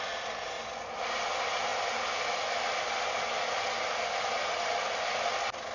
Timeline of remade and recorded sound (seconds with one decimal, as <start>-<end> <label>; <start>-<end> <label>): 0.0-5.7 recorded